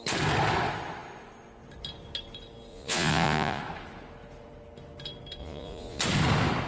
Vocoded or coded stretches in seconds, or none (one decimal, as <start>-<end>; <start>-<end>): 2.7-3.6; 5.4-6.0